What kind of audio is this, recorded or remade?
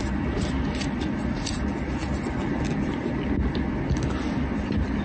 recorded